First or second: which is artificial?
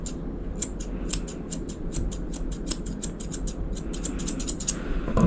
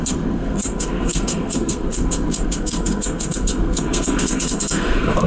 second